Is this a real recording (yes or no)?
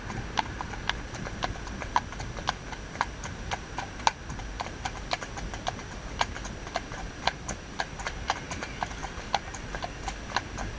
yes